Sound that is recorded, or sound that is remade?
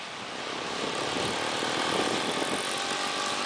recorded